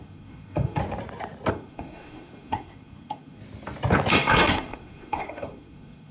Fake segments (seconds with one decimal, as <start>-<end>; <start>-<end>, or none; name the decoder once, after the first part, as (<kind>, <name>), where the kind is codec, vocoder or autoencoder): 0.0-0.8 (codec, SNAC); 1.5-3.4; 4.1-6.1